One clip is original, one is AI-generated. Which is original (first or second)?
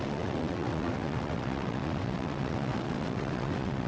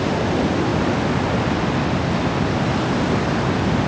second